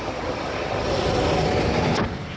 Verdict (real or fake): real